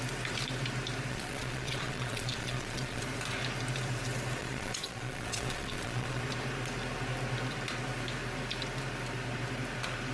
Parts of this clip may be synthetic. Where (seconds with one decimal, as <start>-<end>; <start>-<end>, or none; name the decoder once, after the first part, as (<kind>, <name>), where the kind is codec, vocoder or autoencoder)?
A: 1.1-3.0 (vocoder, Vocos); 4.4-6.2